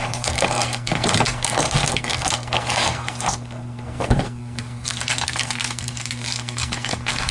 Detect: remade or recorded remade